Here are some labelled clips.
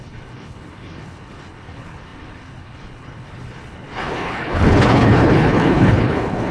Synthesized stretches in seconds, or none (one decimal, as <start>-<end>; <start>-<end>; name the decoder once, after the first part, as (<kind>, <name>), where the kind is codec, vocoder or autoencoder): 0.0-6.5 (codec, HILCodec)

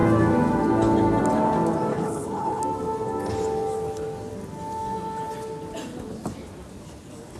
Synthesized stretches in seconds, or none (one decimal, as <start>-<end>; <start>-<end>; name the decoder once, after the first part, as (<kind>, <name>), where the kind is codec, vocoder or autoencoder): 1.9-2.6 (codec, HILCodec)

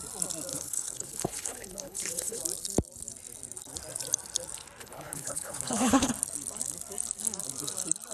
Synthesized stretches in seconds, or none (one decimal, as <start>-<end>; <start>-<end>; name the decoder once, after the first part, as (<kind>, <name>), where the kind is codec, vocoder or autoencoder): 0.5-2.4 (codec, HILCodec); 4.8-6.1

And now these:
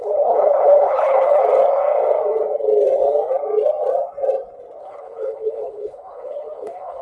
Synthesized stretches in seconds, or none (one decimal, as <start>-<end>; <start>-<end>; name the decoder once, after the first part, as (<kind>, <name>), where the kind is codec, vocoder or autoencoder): 0.0-1.4 (codec, HILCodec); 4.8-7.0